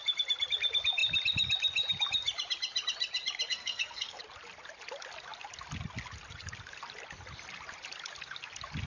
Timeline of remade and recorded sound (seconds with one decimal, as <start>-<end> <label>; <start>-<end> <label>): 0.0-3.5 recorded; 3.5-4.2 remade; 4.2-8.9 recorded